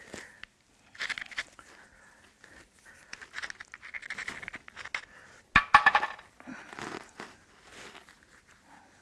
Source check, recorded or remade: recorded